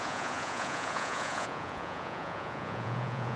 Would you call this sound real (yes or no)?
no